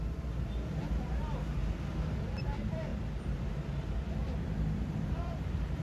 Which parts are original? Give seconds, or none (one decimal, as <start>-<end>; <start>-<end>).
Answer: 1.6-2.4; 2.9-4.8